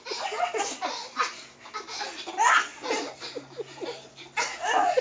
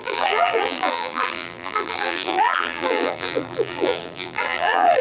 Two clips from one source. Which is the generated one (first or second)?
second